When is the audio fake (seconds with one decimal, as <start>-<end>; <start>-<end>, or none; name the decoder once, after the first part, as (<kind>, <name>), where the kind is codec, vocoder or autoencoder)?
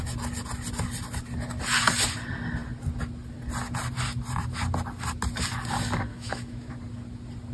6.1-6.7 (autoencoder, DAC-VAE)